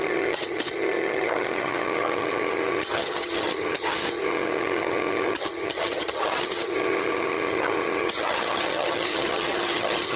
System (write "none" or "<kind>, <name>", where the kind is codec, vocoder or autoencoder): vocoder, HiFi-GAN